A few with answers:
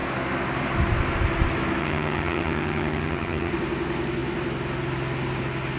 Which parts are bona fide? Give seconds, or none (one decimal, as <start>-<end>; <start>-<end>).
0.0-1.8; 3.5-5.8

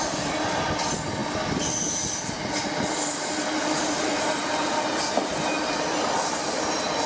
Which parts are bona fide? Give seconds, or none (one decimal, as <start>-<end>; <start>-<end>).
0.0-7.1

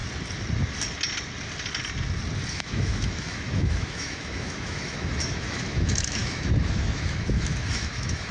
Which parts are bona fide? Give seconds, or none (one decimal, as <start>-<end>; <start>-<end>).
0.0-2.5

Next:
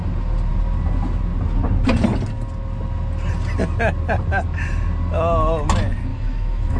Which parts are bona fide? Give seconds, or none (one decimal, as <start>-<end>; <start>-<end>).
0.0-6.1